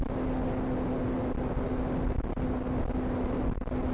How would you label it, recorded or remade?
recorded